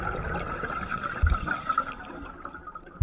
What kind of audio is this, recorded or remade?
recorded